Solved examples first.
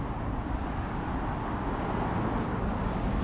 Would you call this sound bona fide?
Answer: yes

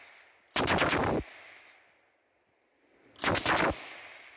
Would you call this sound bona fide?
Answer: yes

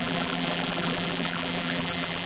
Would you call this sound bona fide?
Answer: no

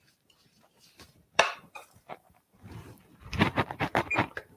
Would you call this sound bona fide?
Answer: no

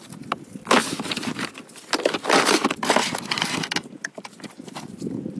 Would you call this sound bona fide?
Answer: yes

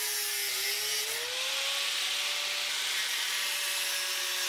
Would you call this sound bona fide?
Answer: yes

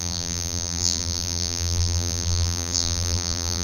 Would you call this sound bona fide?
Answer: no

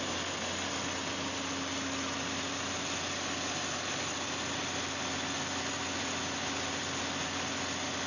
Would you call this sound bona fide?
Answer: yes